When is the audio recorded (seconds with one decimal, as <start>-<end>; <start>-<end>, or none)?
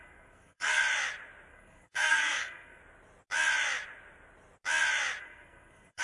0.8-1.5; 2.8-5.2